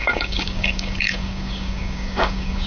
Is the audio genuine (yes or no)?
no